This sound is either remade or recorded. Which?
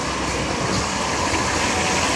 recorded